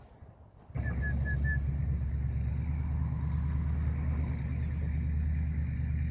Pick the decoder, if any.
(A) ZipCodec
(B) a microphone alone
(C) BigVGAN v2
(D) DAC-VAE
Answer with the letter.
B